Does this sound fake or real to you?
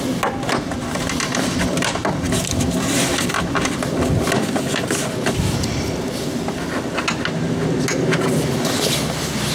real